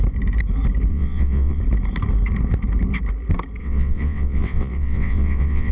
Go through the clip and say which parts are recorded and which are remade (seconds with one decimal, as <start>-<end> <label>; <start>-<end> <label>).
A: 0.0-0.9 recorded; 0.9-1.6 remade; 1.6-3.6 recorded; 3.6-5.7 remade